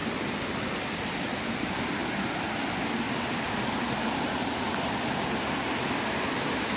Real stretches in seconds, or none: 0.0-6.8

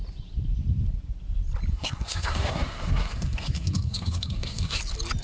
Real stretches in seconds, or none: 0.0-1.7; 4.8-5.2